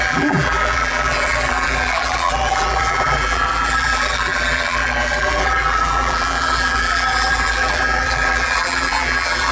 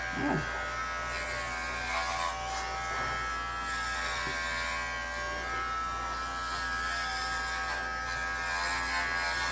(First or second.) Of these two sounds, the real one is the second